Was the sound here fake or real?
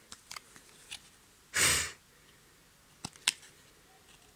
real